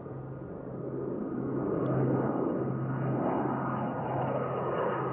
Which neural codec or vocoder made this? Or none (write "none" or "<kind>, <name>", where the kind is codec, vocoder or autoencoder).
none